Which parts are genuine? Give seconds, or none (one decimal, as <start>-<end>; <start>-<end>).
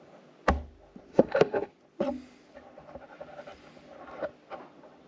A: 0.0-1.1; 1.7-5.1